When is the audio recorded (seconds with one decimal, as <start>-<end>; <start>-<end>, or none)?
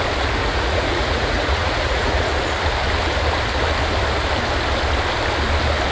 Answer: 0.0-0.4; 2.3-5.9